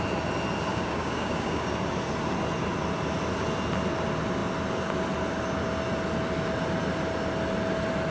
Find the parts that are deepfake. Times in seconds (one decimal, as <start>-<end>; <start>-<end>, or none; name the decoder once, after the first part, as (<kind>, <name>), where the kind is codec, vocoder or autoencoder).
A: 0.7-1.7 (codec, DAC)